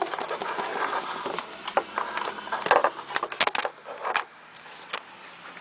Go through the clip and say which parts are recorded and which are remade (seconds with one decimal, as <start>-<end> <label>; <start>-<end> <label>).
0.0-5.6 recorded